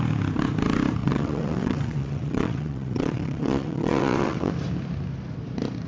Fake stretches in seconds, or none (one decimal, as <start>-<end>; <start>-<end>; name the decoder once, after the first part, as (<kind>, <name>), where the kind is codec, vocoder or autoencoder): 1.0-4.5 (vocoder, WaveNeXt)